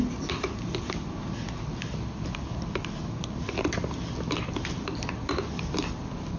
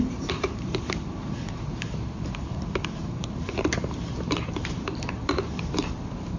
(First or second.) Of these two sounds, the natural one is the first